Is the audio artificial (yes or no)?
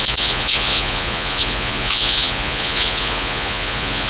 yes